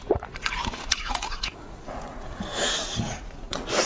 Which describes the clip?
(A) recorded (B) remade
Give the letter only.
B